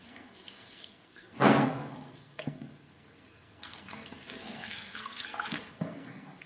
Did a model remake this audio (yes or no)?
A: yes